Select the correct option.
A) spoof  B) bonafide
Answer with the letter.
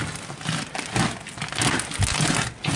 B